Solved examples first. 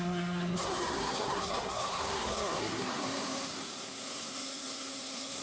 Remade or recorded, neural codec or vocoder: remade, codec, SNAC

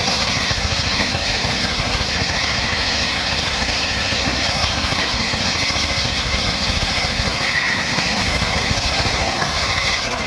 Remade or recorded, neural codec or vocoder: remade, codec, SNAC